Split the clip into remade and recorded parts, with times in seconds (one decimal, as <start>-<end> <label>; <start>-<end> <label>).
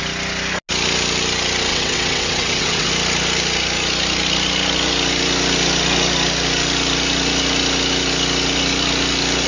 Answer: 0.0-1.7 recorded; 1.7-2.9 remade; 2.9-9.5 recorded